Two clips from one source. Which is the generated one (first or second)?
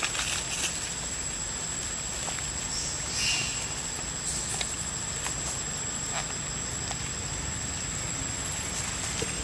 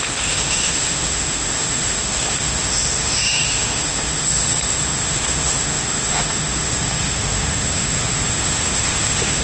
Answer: second